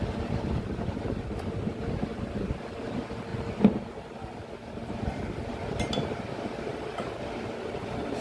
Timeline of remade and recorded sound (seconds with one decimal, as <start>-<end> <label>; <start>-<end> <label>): 0.0-8.2 recorded